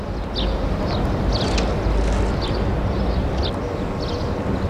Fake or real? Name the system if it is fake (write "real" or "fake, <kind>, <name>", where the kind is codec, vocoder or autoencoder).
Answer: real